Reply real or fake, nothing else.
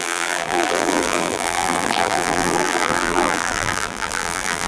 fake